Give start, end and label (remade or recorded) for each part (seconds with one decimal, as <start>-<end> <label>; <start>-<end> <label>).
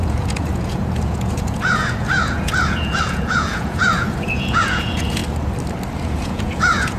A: 0.0-5.2 remade; 5.2-6.0 recorded; 6.0-7.0 remade